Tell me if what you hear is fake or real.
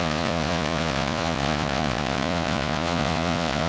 fake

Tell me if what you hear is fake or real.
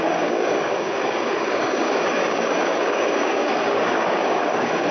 fake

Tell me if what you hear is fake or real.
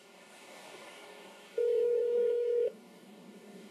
fake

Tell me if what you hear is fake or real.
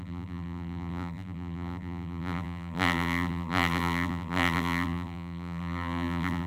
fake